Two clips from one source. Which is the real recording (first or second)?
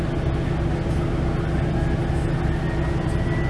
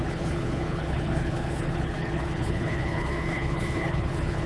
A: first